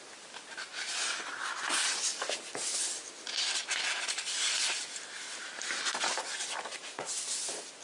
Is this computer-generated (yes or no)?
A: no